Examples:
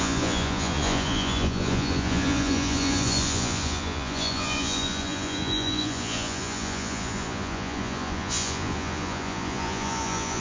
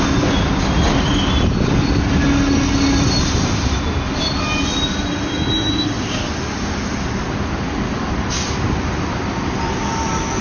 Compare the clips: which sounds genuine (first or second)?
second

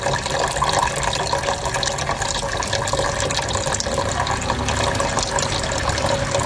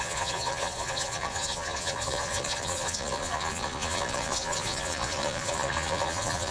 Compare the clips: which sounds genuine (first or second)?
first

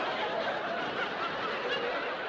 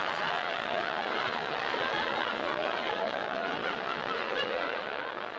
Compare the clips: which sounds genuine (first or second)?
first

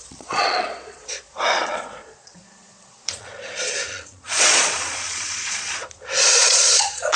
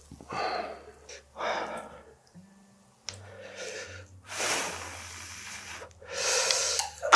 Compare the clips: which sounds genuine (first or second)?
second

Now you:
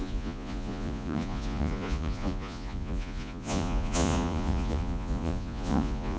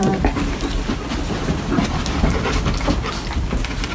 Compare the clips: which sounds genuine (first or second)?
second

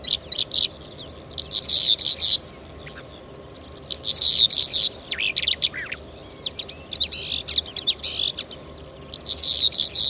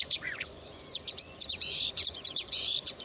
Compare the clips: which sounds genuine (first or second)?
first